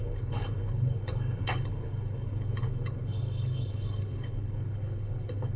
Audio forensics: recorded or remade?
remade